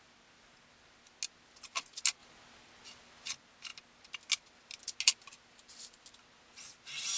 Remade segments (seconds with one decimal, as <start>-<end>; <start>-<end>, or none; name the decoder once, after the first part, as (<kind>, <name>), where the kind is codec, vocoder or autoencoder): none